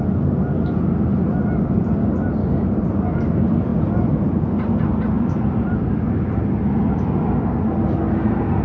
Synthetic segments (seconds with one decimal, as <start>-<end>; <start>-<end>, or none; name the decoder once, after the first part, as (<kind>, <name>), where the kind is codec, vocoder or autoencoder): 2.4-2.9 (codec, DAC)

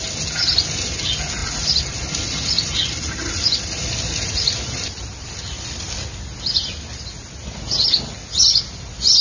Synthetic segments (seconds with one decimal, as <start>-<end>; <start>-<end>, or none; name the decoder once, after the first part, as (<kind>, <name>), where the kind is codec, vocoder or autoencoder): 1.4-5.9 (vocoder, BigVGAN v2)

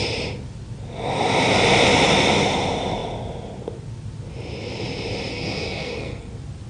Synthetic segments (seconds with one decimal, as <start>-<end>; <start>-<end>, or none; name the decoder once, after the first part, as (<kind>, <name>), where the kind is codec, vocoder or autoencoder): 5.3-6.3 (codec, SNAC)

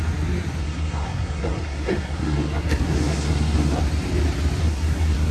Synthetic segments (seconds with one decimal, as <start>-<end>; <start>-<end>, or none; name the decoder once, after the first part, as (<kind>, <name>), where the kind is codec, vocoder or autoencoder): 0.6-3.8 (codec, SNAC); 4.6-5.3

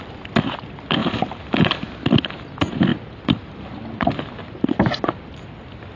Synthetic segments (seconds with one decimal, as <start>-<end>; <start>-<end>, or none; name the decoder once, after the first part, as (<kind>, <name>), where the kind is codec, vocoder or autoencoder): none

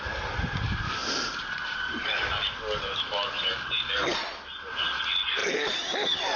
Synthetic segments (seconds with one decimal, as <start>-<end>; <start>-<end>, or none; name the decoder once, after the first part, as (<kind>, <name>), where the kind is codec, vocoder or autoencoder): 5.4-6.4 (vocoder, BigVGAN v2)